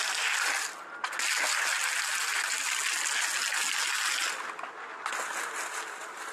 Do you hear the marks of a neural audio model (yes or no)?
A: no